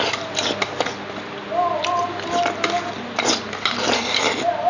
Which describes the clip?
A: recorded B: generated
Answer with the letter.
A